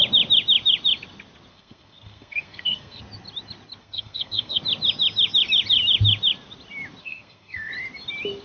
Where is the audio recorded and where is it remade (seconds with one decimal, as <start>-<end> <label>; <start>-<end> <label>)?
0.0-1.5 recorded; 1.5-3.0 remade; 3.0-3.8 recorded; 3.8-4.6 remade; 4.6-7.0 recorded; 7.0-7.7 remade; 7.7-8.4 recorded